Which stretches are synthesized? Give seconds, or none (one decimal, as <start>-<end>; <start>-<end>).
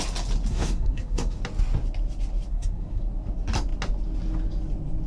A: 0.5-1.4; 2.5-3.0